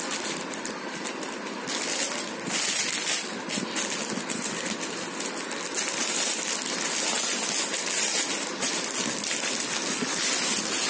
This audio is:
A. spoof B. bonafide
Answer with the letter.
B